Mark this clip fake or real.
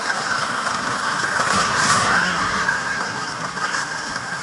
fake